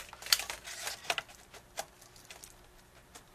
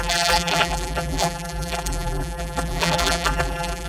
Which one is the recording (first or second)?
first